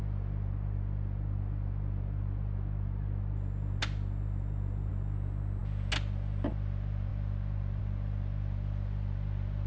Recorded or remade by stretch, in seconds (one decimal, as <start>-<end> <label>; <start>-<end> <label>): 0.0-9.7 recorded